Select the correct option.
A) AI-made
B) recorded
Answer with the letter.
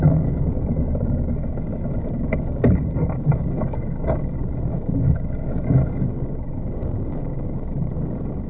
A